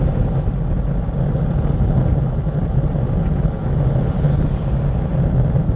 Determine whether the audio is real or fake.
real